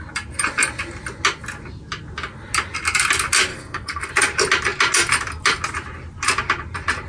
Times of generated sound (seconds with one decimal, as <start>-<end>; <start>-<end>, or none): 3.5-4.1